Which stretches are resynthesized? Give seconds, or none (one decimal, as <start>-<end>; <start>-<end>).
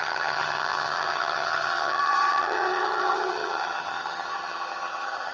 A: 0.0-5.3